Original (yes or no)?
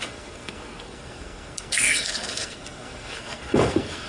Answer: no